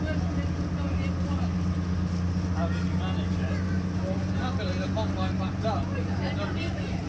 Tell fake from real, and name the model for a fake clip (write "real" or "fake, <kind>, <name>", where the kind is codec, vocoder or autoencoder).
real